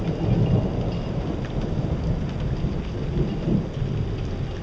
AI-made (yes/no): no